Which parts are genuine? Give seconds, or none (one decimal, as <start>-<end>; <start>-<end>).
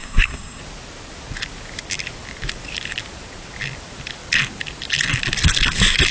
0.6-6.1